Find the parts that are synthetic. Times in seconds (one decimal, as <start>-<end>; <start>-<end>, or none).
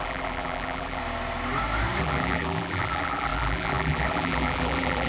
0.0-1.0; 2.0-5.1